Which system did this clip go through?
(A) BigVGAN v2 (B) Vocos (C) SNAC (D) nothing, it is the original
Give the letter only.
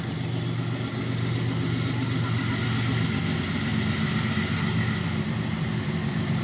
D